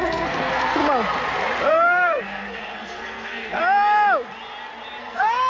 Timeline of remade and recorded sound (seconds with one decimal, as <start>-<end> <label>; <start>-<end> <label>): 0.0-0.8 remade; 0.8-1.7 recorded; 1.7-3.6 remade; 3.6-5.0 recorded; 5.0-5.5 remade